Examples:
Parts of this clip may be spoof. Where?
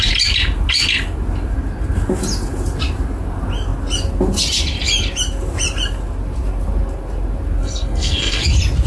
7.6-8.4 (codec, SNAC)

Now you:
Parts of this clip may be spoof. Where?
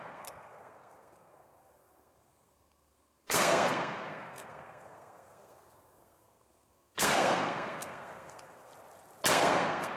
0.0-8.7 (codec, SNAC); 9.3-10.0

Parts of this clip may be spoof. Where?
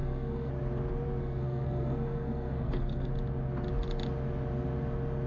0.0-0.5 (codec, SNAC); 1.2-3.1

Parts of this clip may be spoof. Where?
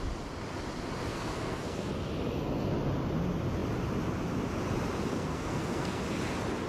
1.1-1.9 (codec, SNAC); 5.1-6.0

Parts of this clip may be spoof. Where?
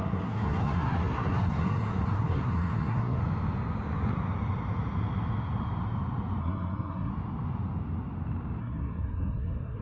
0.0-3.2 (codec, SNAC); 6.4-7.1; 8.6-9.8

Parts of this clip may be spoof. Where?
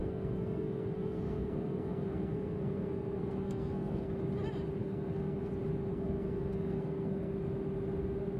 0.0-4.2 (codec, SNAC); 4.8-5.5; 5.9-7.3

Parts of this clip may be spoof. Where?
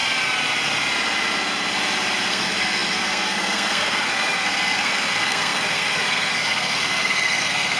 2.3-7.8 (codec, SNAC)